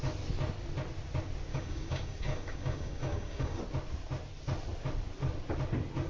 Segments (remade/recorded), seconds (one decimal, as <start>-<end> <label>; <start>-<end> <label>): 0.0-1.5 recorded; 1.5-3.6 remade; 3.6-6.1 recorded